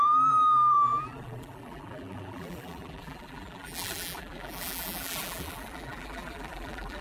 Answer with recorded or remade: remade